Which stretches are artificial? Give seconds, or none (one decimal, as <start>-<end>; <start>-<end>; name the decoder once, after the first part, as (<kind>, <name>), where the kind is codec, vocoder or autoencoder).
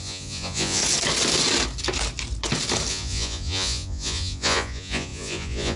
0.0-0.8 (vocoder, Vocos); 2.9-5.8